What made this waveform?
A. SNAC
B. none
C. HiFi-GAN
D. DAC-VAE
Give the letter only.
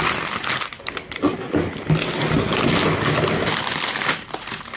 B